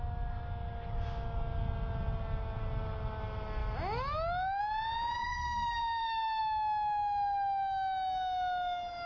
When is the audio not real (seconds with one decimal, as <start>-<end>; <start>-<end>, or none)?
5.2-6.4